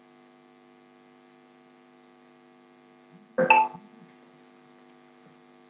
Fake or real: real